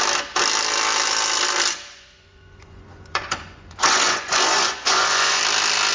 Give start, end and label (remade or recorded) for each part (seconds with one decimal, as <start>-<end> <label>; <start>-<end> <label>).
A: 0.0-1.9 recorded; 1.9-5.4 remade; 5.4-5.9 recorded